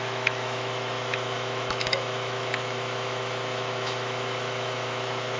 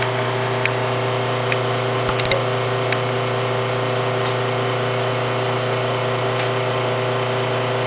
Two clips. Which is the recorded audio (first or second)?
second